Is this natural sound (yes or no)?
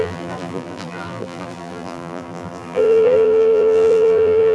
no